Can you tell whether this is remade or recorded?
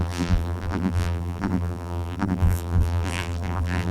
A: remade